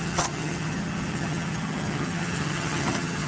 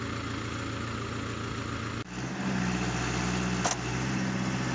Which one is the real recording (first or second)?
second